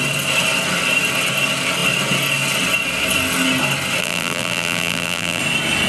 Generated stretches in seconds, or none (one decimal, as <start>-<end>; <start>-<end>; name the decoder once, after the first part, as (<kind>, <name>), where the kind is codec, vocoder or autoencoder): 4.0-5.4 (vocoder, BigVGAN v2)